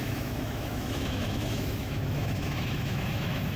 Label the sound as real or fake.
fake